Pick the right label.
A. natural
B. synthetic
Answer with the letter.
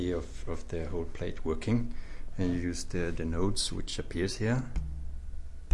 A